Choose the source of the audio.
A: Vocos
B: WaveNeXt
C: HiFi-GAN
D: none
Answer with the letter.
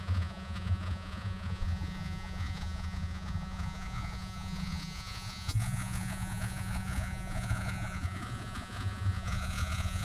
A